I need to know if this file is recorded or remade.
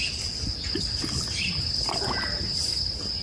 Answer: recorded